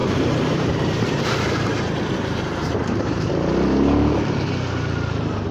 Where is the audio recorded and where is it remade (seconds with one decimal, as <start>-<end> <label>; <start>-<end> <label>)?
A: 0.0-3.3 remade; 3.3-5.5 recorded